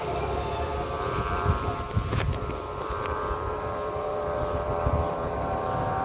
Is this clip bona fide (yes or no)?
no